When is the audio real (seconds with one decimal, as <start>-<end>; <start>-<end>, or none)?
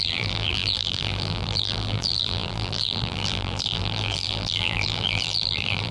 none